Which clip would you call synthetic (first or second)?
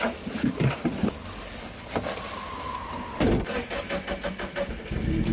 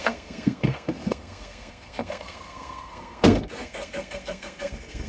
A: second